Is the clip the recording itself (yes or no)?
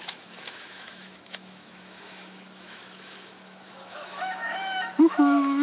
no